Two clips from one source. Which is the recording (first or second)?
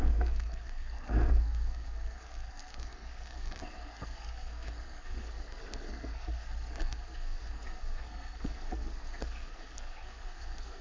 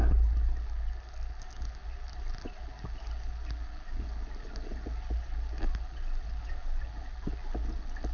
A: second